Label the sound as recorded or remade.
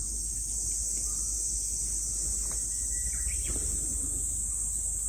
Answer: recorded